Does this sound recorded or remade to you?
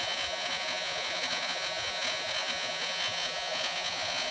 remade